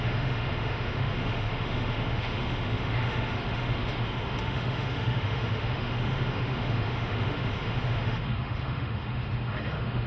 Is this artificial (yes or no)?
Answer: yes